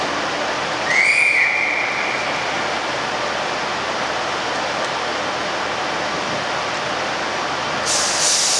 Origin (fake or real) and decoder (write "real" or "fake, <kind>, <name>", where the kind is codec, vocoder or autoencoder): real